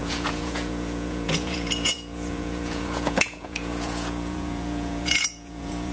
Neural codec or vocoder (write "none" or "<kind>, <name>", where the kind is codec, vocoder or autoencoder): vocoder, Vocos